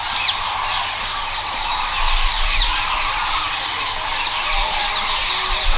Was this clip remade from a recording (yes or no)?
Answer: no